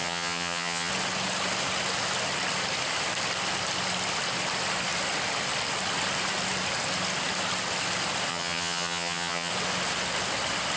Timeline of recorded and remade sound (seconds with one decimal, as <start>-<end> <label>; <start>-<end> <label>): 0.0-0.9 remade; 0.9-8.3 recorded; 8.3-9.5 remade; 9.5-10.8 recorded